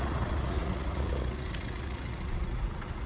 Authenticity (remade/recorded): remade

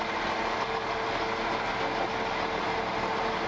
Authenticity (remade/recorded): recorded